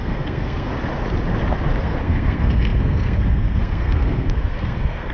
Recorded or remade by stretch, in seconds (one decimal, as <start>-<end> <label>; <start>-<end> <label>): 0.0-0.7 remade; 0.7-1.8 recorded; 1.8-5.1 remade